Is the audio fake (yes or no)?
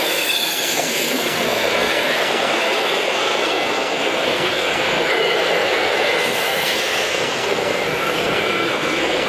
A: yes